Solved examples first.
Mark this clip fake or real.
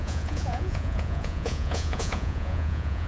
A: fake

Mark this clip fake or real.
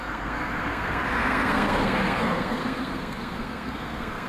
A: fake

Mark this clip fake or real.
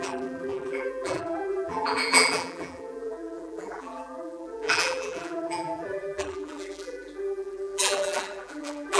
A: fake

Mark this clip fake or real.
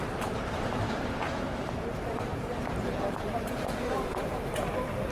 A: fake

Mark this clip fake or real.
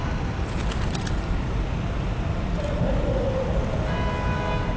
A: real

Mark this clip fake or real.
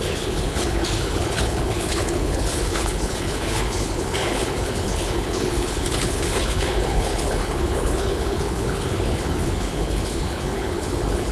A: fake